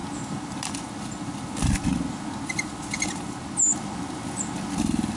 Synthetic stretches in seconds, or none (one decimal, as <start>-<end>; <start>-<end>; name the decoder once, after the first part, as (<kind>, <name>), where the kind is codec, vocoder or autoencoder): none